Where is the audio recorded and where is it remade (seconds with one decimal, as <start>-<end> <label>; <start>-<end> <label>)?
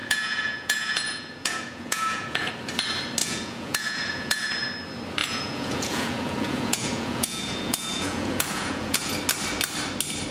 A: 0.0-2.5 remade; 2.5-3.2 recorded; 3.2-4.5 remade; 4.5-5.2 recorded; 5.2-9.1 remade; 9.1-10.3 recorded